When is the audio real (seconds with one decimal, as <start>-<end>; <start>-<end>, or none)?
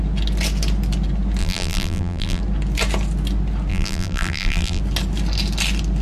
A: 0.0-1.4; 2.4-3.7; 4.8-6.0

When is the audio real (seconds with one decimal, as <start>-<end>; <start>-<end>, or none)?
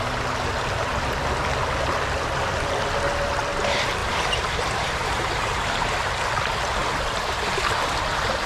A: 0.0-4.0; 5.9-8.5